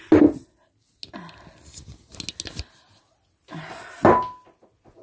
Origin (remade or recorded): recorded